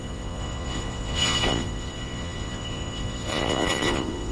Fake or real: fake